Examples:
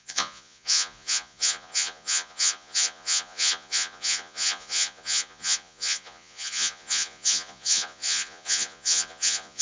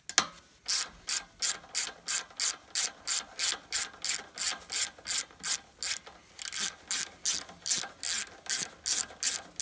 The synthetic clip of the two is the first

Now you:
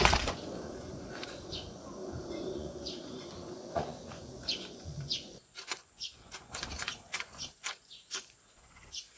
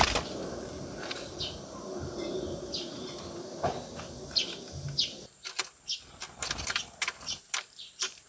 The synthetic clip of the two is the first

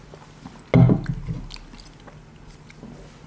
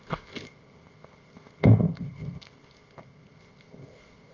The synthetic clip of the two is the second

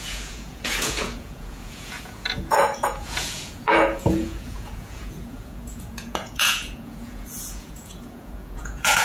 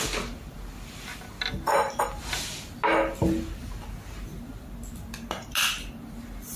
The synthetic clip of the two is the first